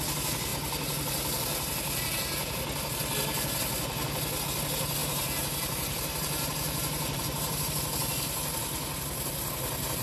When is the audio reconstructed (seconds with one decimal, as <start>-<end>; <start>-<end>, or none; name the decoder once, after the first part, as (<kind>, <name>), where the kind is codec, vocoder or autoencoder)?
5.0-7.7 (vocoder, BigVGAN v2)